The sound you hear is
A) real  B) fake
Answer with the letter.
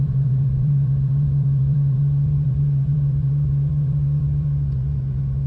B